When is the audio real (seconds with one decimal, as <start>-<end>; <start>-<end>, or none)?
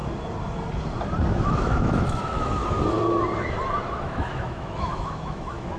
0.0-1.3; 2.6-3.9